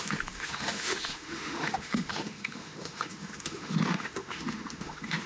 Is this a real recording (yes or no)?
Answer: no